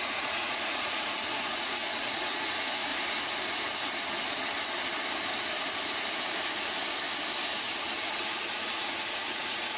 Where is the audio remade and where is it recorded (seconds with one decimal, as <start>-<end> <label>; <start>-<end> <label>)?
0.0-2.9 remade; 2.9-8.0 recorded; 8.0-9.8 remade